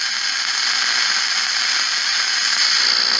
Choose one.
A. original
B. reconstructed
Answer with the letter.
A